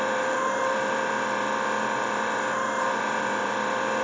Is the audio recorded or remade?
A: remade